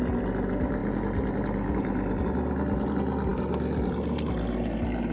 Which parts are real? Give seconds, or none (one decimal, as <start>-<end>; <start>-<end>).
0.0-5.1